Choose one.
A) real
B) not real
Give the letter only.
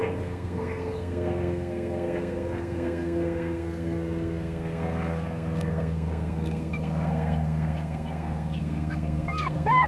B